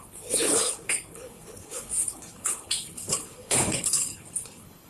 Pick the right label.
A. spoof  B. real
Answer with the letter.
A